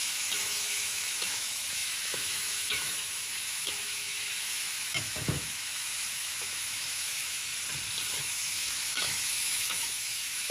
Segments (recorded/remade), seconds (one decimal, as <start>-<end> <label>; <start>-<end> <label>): 0.0-7.5 remade; 7.5-8.2 recorded; 8.2-10.5 remade